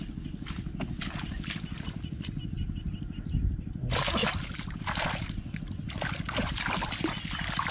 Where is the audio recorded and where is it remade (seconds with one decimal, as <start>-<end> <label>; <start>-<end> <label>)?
0.0-4.2 recorded; 4.2-4.8 remade; 4.8-7.7 recorded